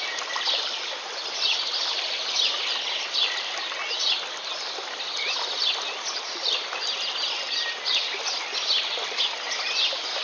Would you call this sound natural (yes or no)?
yes